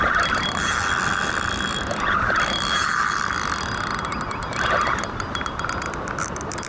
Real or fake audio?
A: fake